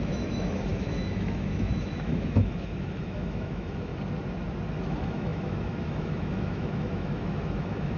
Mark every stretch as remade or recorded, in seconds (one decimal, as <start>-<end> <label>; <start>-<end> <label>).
0.0-3.9 remade; 3.9-4.7 recorded; 4.7-8.0 remade